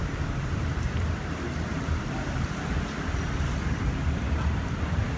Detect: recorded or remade remade